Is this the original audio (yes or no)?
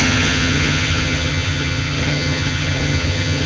no